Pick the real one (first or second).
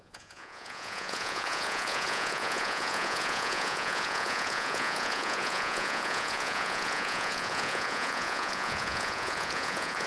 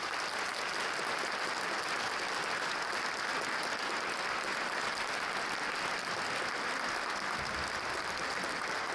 second